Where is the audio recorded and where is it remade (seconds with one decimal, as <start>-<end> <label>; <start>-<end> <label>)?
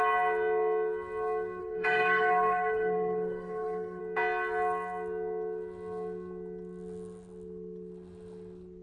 0.0-1.6 recorded; 1.6-4.0 remade; 4.0-8.8 recorded